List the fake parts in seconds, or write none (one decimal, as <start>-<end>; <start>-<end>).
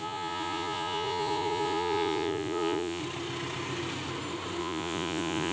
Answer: 0.0-3.0; 4.6-5.5